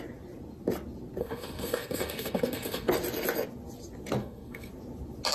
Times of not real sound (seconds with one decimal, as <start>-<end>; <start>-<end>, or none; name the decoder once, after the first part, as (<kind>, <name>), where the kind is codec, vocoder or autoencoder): 1.2-2.9 (codec, SNAC); 4.2-4.7

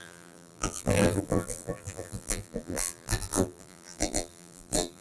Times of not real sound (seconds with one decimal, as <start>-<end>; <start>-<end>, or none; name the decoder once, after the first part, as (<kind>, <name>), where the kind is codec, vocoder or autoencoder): 0.0-5.0 (vocoder, BigVGAN v2)